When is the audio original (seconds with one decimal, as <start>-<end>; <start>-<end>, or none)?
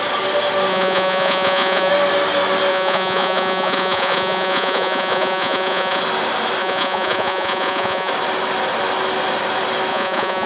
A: 0.0-0.7; 1.9-2.7; 6.0-6.6; 8.1-9.9